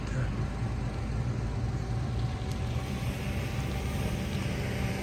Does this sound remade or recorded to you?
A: recorded